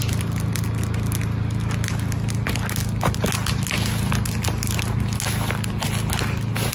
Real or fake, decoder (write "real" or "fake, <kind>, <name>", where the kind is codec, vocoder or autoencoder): real